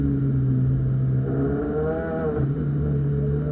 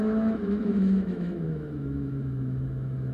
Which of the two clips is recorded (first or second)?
first